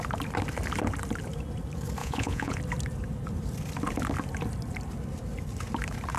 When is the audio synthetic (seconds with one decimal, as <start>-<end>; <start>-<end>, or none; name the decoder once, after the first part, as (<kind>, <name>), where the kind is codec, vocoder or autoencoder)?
2.0-2.6 (vocoder, Vocos)